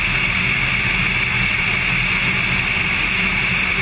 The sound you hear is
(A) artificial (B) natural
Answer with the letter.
B